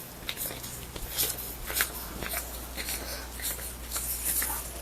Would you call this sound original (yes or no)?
yes